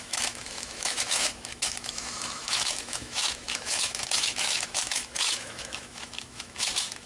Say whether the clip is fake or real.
fake